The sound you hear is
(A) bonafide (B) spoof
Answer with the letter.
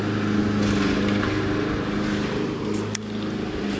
A